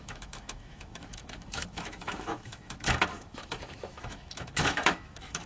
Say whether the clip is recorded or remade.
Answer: remade